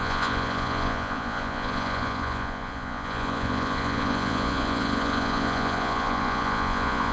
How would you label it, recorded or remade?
remade